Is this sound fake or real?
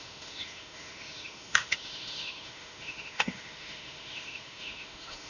fake